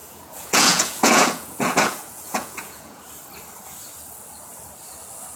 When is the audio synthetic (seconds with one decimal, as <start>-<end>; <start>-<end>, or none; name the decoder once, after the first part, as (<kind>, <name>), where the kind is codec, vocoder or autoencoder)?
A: 0.0-3.0 (vocoder, Vocos)